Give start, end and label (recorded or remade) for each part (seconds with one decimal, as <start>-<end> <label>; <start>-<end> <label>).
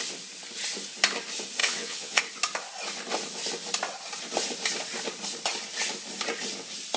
0.0-1.6 recorded; 1.6-2.2 remade; 2.2-7.0 recorded